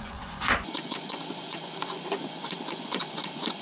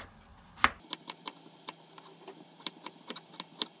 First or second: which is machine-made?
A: first